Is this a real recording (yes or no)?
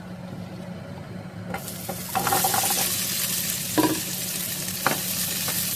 yes